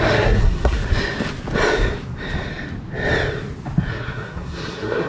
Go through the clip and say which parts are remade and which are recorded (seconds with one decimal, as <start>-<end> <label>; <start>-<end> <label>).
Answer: 0.0-0.8 remade; 0.8-3.9 recorded; 3.9-5.1 remade